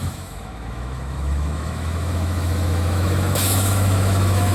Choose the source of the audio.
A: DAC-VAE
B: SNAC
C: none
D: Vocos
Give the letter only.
A